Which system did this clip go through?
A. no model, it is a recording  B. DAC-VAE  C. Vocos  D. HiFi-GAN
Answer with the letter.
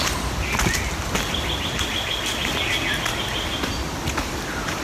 A